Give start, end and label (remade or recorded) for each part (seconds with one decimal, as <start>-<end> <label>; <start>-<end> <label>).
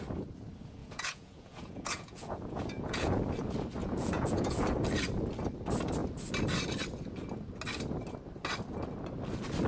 0.0-0.8 recorded; 0.8-3.2 remade; 3.2-3.8 recorded; 3.8-4.6 remade; 4.6-9.7 recorded